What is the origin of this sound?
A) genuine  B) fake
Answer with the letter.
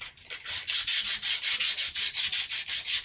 A